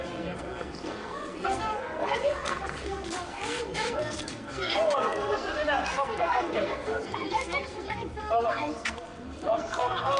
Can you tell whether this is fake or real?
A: fake